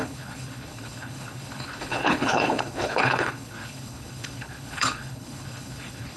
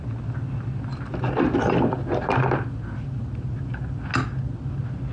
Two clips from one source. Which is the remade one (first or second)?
first